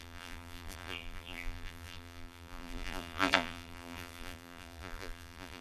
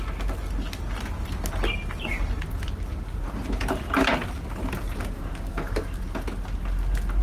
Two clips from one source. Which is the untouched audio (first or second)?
second